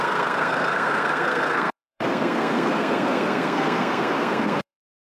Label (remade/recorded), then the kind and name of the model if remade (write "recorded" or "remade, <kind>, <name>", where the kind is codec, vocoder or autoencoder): remade, codec, SNAC